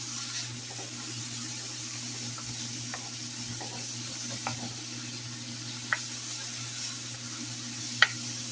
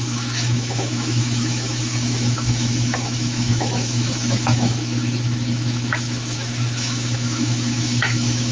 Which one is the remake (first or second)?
second